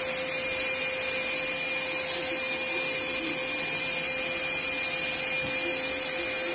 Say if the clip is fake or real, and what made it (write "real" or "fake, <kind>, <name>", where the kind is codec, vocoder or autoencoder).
real